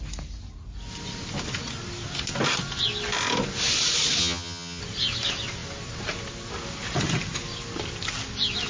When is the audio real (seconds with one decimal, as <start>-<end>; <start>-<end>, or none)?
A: 0.0-4.2; 4.8-8.7